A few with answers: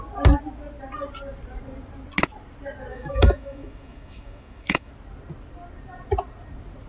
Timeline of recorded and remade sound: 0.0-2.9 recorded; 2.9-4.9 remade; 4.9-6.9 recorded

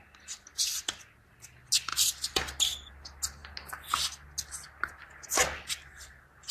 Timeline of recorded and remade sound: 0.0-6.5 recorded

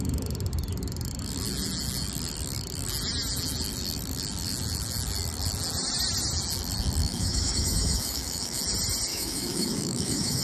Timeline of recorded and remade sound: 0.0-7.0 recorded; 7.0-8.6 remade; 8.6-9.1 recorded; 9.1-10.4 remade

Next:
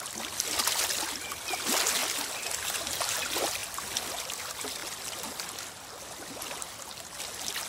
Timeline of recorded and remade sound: 0.0-7.7 recorded